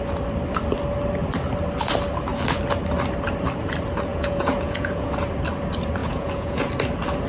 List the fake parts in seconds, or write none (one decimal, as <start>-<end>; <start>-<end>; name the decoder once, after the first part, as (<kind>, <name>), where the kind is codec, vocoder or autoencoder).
4.1-5.1 (vocoder, Vocos); 6.0-6.7